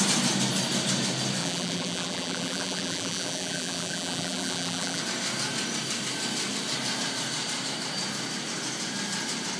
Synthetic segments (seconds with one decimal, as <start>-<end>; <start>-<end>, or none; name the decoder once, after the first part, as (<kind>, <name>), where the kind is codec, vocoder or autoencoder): 1.4-5.0 (vocoder, BigVGAN v2)